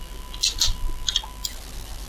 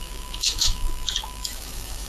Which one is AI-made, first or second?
second